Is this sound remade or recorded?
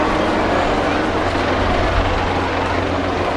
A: recorded